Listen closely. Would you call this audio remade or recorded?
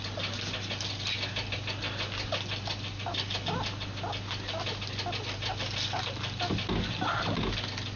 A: recorded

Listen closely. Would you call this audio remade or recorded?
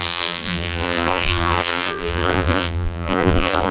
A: remade